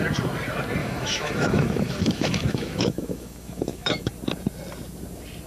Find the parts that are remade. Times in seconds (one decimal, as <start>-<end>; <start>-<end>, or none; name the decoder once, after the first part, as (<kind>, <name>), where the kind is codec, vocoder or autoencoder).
0.8-4.1 (autoencoder, DAC-VAE)